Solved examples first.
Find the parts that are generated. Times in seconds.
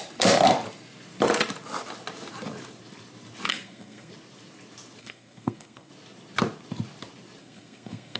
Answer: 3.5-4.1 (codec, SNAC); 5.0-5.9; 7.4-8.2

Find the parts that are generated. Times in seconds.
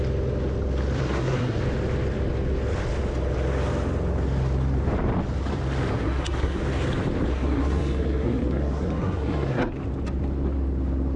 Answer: 1.0-1.6 (codec, SNAC); 5.9-6.6; 7.3-9.7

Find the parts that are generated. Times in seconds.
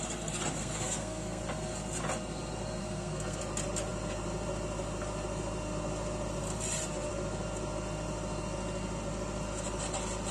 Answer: 0.6-1.4 (codec, SNAC); 2.8-3.4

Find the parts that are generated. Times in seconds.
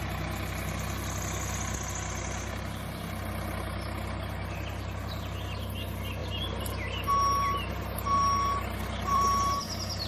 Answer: none